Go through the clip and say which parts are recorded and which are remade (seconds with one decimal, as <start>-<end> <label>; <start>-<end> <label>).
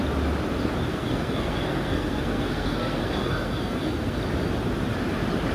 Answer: 0.0-0.9 recorded; 0.9-4.2 remade; 4.2-5.5 recorded